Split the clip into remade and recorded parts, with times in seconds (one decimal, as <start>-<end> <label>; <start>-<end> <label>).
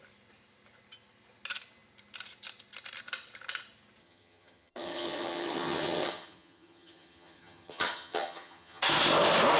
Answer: 0.0-4.0 recorded; 4.0-8.8 remade; 8.8-9.6 recorded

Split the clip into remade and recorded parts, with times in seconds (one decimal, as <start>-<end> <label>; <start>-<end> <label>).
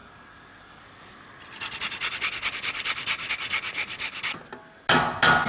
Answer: 0.0-5.5 recorded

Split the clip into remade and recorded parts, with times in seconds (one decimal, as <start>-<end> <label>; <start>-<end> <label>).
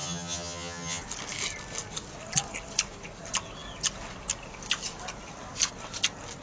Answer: 0.0-1.0 remade; 1.0-6.4 recorded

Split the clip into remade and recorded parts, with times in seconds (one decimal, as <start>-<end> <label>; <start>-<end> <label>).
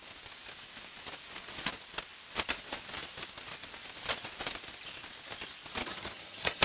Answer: 0.0-5.8 recorded; 5.8-6.6 remade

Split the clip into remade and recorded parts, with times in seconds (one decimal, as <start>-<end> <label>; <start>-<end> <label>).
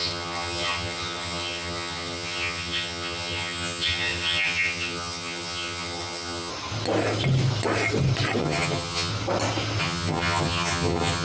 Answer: 0.0-6.5 remade; 6.5-8.4 recorded; 8.4-9.1 remade; 9.1-9.8 recorded; 9.8-11.2 remade